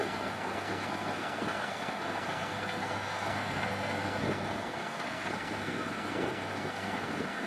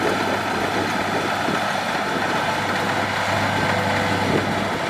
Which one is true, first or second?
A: second